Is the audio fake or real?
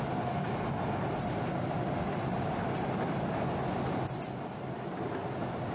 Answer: real